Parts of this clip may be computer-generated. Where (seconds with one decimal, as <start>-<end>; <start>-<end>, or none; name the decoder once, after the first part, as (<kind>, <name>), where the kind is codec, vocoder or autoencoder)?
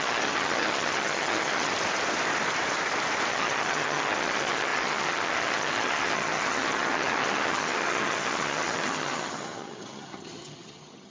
0.0-1.7 (vocoder, HiFi-GAN); 3.3-11.1